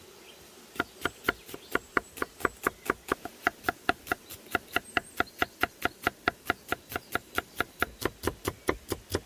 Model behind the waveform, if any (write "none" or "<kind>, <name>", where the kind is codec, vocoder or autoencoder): none